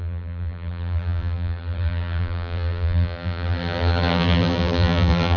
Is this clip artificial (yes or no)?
yes